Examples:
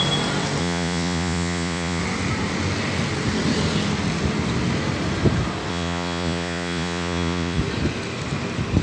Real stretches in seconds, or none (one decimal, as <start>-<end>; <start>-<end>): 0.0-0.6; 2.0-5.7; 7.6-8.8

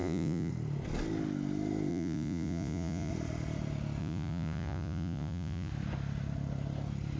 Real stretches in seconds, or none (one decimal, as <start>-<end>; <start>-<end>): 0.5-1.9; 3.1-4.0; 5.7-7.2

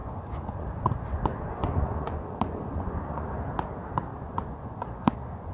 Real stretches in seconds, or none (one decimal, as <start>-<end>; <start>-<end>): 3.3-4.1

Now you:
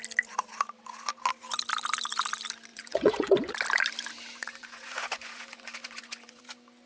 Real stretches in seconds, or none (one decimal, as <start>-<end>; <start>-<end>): 0.0-2.7; 3.5-4.4; 6.4-6.9

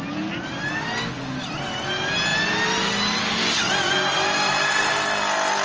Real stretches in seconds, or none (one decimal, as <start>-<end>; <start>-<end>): 0.0-5.6

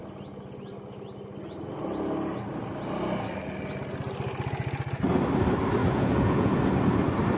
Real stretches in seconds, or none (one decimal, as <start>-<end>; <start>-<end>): 0.0-5.8; 6.6-7.4